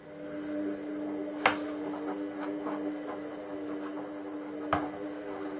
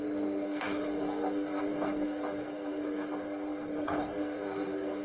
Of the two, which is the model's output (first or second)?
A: second